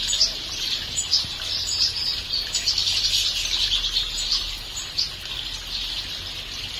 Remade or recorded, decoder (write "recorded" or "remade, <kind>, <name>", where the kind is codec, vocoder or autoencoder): recorded